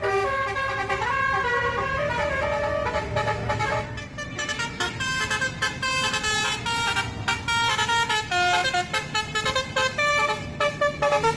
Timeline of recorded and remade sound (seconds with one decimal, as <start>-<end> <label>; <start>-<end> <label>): 0.0-11.4 recorded